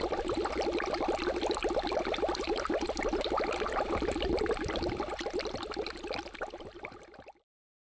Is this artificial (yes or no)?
no